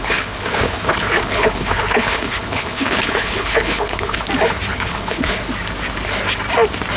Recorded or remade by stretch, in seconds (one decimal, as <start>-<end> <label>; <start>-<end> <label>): 0.0-4.2 remade; 4.2-4.7 recorded; 4.7-5.4 remade; 5.4-7.0 recorded